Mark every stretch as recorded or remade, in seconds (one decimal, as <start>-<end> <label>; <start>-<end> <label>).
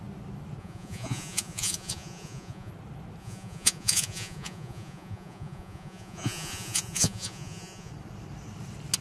0.0-0.6 recorded; 0.6-2.7 remade; 2.7-3.2 recorded; 3.2-7.9 remade; 7.9-9.0 recorded